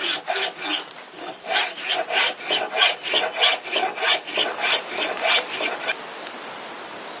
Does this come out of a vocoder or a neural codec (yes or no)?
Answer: no